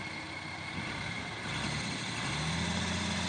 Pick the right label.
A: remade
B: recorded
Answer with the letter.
B